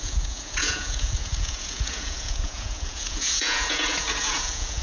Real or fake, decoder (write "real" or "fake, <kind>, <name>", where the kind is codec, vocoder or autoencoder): fake, vocoder, Vocos